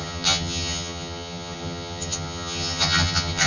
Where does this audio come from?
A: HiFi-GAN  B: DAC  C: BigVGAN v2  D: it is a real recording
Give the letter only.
A